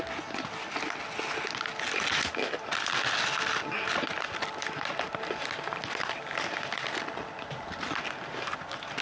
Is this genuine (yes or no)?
yes